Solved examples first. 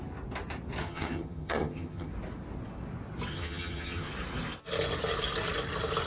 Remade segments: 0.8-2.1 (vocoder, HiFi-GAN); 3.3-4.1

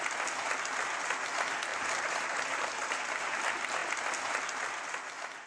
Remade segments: 1.7-2.4 (vocoder, BigVGAN v2); 2.8-3.4